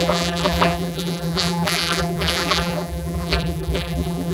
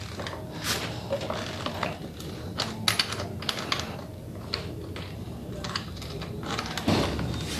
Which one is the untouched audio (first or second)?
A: second